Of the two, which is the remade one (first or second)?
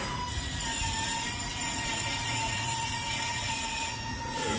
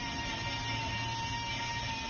first